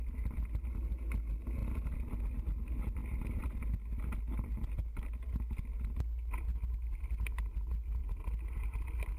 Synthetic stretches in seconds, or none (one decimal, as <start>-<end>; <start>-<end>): none

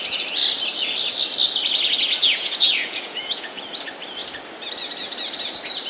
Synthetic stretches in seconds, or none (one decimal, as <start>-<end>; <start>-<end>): 2.2-3.6